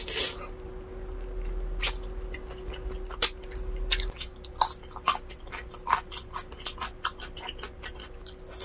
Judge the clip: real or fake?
real